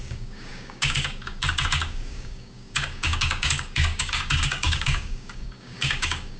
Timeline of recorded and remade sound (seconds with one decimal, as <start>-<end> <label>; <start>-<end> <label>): 0.0-6.4 remade